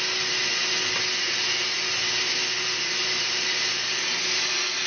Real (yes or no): yes